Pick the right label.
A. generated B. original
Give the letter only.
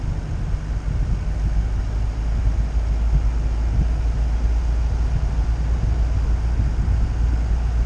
B